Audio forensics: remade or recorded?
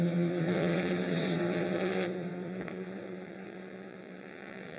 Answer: remade